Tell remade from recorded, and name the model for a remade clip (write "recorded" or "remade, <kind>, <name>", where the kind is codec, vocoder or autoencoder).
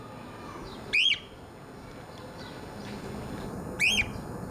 recorded